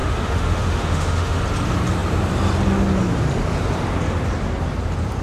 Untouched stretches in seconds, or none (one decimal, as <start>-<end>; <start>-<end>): 1.4-5.2